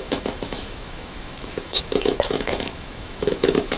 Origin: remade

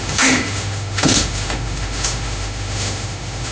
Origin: remade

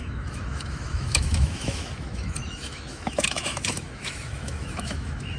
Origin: remade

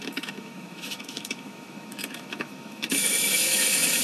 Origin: remade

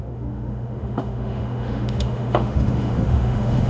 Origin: remade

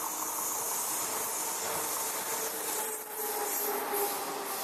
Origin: recorded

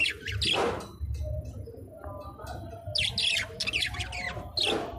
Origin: recorded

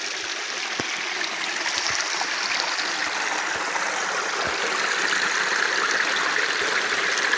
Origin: recorded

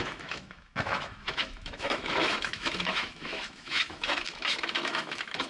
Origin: remade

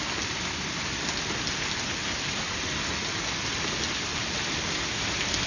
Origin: recorded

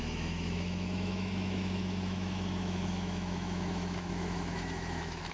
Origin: remade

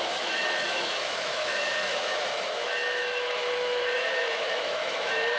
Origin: remade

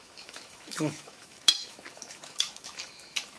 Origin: remade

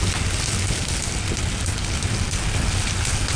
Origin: recorded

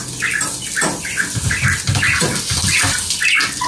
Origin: recorded